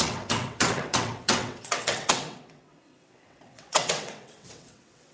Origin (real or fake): fake